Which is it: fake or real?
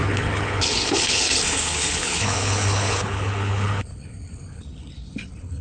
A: fake